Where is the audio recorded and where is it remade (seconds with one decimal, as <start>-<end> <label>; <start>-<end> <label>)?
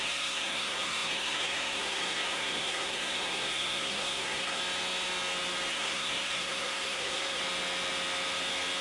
0.0-4.6 remade; 4.6-5.7 recorded; 5.7-7.4 remade; 7.4-8.8 recorded